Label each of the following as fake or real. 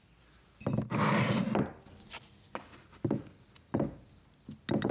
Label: real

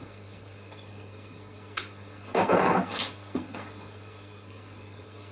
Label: fake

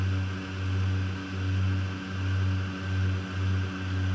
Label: real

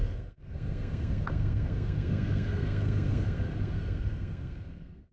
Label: fake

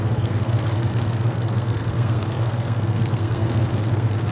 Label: fake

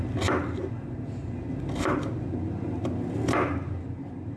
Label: real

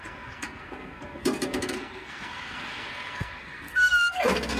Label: fake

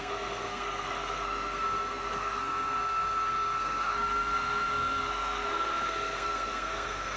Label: fake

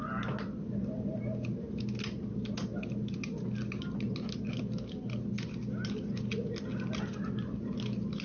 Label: real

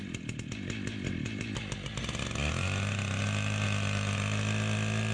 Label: real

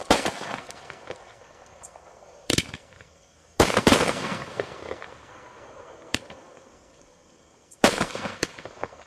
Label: fake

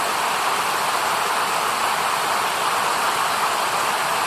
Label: real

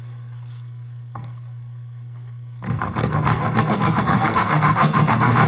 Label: fake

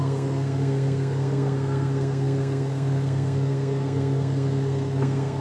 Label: fake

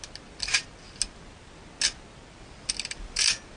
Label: real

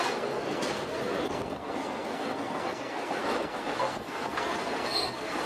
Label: fake